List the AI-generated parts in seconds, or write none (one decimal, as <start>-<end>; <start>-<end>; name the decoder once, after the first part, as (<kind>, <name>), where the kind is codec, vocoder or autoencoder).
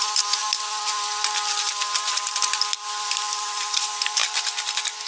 none